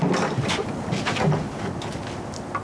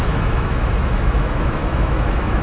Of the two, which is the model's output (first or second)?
second